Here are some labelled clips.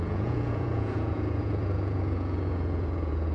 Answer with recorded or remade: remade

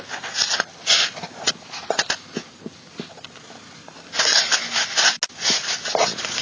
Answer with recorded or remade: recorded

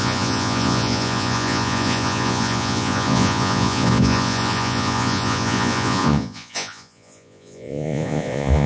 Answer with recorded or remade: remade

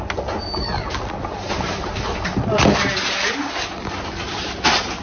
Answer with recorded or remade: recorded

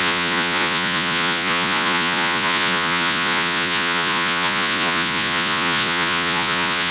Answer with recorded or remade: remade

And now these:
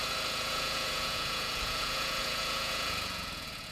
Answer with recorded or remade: remade